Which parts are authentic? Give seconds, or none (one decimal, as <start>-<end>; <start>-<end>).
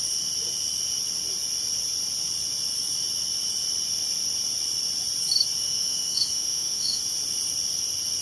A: 0.0-5.6; 7.0-8.2